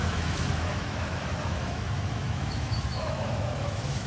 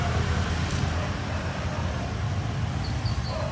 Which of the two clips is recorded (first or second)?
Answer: second